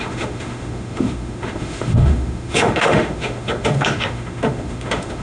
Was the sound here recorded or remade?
remade